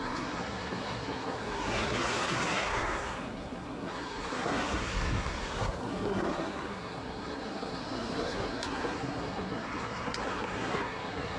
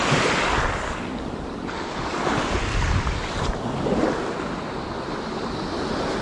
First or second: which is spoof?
first